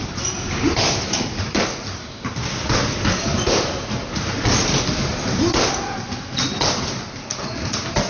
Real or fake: real